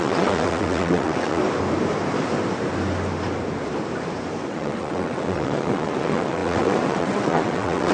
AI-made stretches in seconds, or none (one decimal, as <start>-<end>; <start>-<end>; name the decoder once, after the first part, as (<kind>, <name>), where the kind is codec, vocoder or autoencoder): 0.0-1.4 (vocoder, WaveNeXt); 4.5-7.9

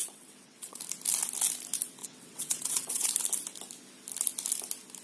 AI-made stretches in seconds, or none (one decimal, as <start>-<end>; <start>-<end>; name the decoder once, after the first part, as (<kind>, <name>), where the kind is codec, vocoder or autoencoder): 0.0-0.8 (vocoder, WaveNeXt); 2.0-3.1